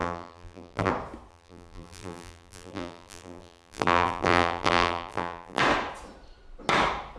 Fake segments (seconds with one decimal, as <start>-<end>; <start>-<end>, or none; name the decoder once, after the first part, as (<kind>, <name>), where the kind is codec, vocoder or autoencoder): 0.0-0.9 (vocoder, BigVGAN v2); 1.3-5.6